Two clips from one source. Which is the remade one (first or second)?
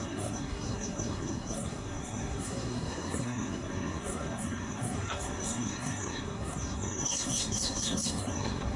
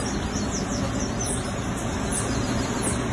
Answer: first